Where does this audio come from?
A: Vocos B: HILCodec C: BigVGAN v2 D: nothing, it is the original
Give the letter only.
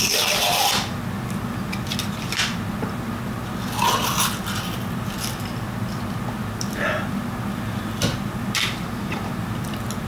D